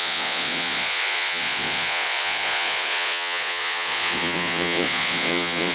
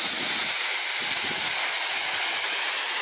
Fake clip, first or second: first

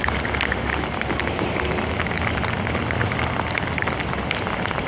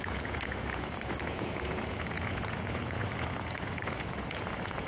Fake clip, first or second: second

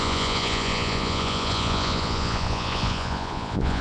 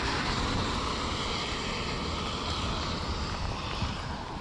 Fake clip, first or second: first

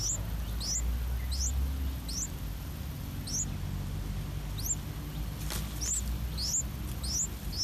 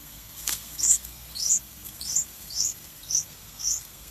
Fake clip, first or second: second